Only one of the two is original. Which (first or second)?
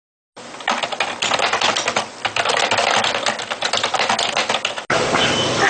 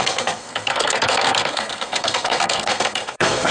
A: first